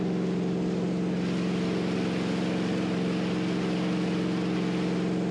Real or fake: real